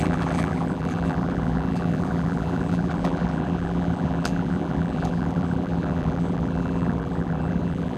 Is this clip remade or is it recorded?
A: remade